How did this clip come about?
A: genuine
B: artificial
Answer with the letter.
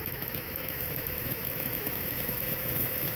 B